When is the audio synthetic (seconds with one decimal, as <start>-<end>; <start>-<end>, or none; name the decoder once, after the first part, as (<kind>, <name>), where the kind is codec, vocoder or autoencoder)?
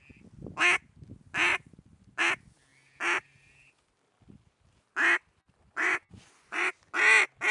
1.5-2.2 (vocoder, Vocos); 5.6-6.7